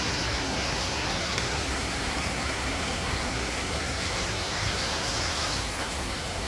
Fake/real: fake